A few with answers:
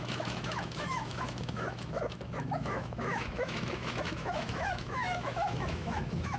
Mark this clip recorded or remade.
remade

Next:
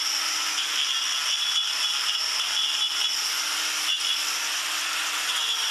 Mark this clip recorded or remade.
remade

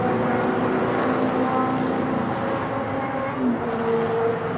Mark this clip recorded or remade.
recorded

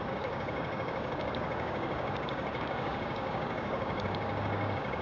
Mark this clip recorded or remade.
remade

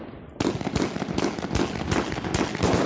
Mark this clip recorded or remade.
recorded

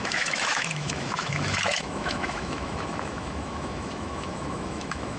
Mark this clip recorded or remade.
remade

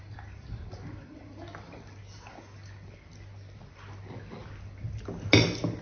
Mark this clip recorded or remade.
recorded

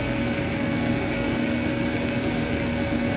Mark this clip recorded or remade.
remade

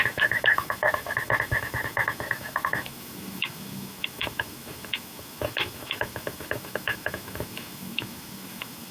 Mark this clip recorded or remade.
remade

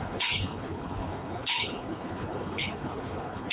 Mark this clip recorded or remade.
remade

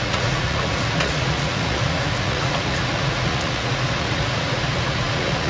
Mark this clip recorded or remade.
remade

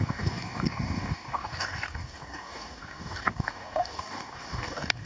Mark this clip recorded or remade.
remade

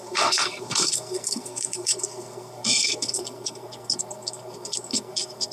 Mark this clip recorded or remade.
remade